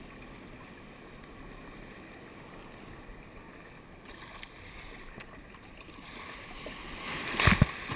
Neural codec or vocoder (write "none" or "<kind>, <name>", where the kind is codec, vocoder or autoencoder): none